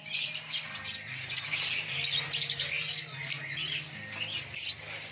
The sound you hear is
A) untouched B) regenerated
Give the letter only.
A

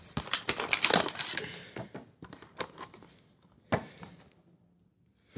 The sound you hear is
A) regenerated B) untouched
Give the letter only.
B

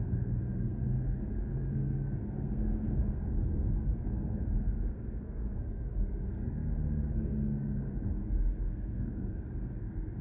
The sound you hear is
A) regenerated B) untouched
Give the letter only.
A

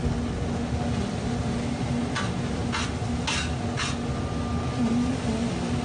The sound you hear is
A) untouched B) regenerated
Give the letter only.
A